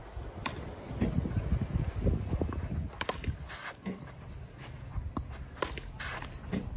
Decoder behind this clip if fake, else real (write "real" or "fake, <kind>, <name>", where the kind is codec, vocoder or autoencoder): real